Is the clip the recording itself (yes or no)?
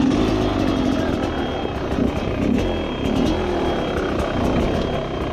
yes